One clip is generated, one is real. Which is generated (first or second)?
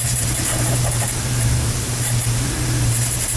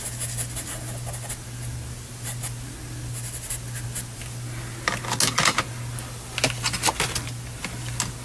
first